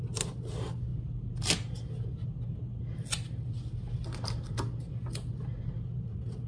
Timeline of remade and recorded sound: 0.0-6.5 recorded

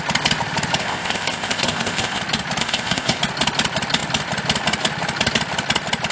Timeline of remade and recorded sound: 0.0-0.8 recorded; 0.8-2.2 remade; 2.2-2.6 recorded; 2.6-3.2 remade; 3.2-6.1 recorded

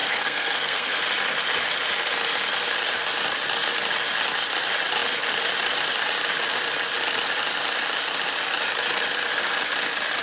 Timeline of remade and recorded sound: 0.0-1.0 remade; 1.0-10.2 recorded